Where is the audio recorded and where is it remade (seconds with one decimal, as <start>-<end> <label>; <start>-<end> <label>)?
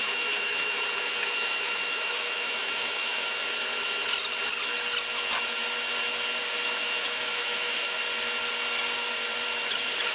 0.0-3.4 remade; 3.4-6.4 recorded; 6.4-8.0 remade; 8.0-9.6 recorded; 9.6-10.1 remade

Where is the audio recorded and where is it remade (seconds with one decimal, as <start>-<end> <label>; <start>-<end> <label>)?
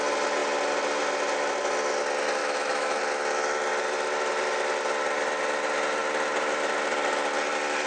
0.0-2.4 recorded; 2.4-3.0 remade; 3.0-7.9 recorded